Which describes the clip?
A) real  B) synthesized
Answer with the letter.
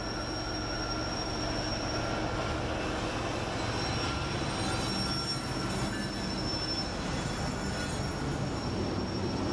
A